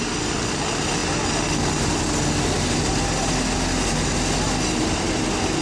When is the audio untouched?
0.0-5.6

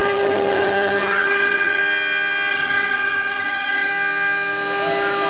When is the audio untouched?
1.8-2.5; 3.9-5.3

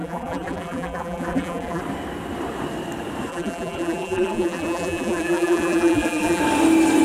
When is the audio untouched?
1.8-3.3; 6.4-7.0

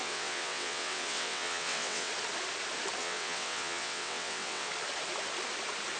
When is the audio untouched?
2.1-3.0; 4.7-6.0

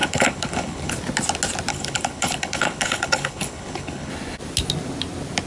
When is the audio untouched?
0.9-1.7; 4.1-5.5

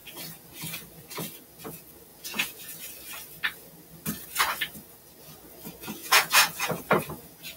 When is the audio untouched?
0.0-2.1; 2.8-6.0; 6.8-7.6